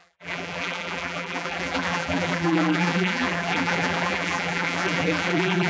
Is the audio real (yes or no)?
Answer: no